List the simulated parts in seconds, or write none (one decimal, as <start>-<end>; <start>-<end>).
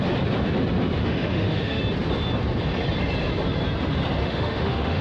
1.0-1.8; 4.2-5.0